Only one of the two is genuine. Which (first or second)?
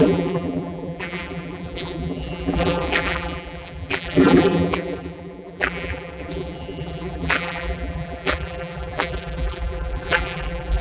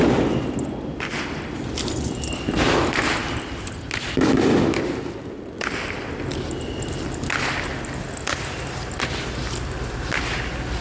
second